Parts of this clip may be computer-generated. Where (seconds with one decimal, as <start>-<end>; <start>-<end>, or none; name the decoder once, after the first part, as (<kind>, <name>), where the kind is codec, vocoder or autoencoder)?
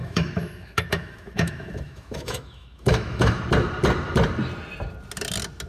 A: 0.0-3.4 (autoencoder, DAC-VAE)